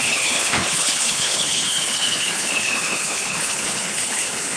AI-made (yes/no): yes